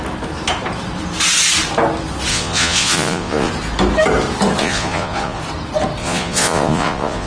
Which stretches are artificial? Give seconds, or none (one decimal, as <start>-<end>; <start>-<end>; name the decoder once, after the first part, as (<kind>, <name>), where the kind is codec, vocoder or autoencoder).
2.3-3.5 (vocoder, Vocos); 4.6-5.4; 6.0-7.3